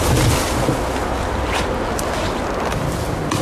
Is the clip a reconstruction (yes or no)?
no